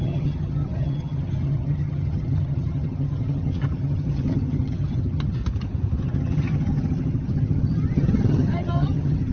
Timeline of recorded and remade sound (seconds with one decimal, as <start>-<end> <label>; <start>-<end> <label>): 0.0-5.4 remade; 5.4-6.0 recorded; 6.0-9.3 remade